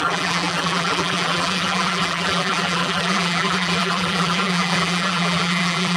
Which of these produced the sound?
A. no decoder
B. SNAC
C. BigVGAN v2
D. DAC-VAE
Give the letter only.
C